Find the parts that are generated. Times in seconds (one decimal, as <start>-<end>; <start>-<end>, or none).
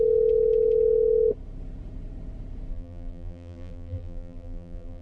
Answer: 2.7-5.0